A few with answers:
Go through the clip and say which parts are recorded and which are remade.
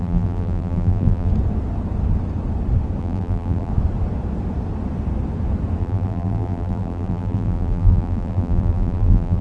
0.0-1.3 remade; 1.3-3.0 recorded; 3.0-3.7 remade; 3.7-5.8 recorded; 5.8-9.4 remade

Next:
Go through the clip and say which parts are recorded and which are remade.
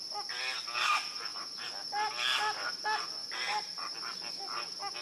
0.0-1.3 recorded; 1.3-1.9 remade; 1.9-3.2 recorded; 3.2-4.3 remade; 4.3-5.0 recorded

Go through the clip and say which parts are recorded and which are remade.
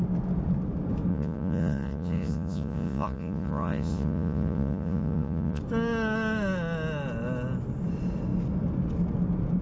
0.0-1.1 recorded; 1.1-5.6 remade; 5.6-9.6 recorded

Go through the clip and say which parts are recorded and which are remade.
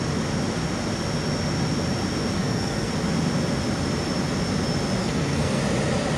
0.0-2.4 recorded; 2.4-2.9 remade; 2.9-5.0 recorded; 5.0-5.6 remade; 5.6-6.2 recorded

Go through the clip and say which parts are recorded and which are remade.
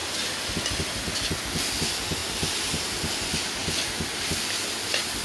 0.0-5.2 recorded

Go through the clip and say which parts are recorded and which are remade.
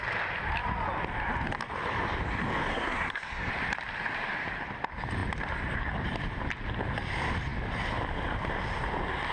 0.0-2.7 recorded; 2.7-3.5 remade; 3.5-9.3 recorded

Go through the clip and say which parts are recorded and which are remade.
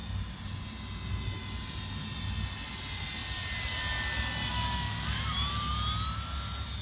0.0-6.8 recorded